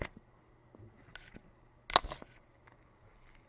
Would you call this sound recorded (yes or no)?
yes